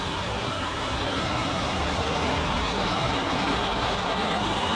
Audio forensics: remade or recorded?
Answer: remade